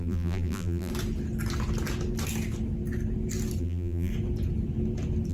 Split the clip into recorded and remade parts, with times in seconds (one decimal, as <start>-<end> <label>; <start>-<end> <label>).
0.0-0.9 remade; 0.9-3.6 recorded; 3.6-4.1 remade; 4.1-5.3 recorded